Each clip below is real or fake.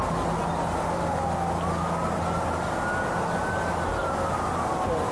real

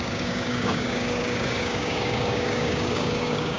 fake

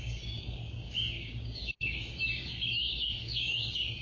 fake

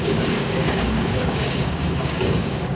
fake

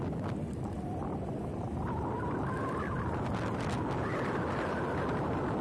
real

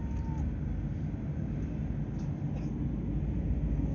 real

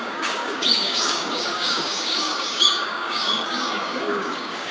fake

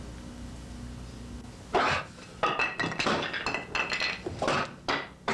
real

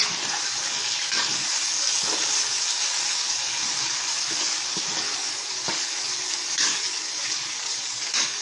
fake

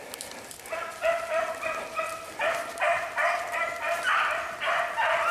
real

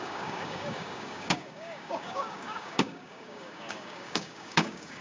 fake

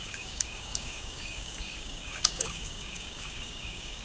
fake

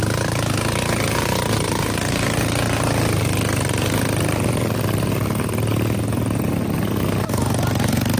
real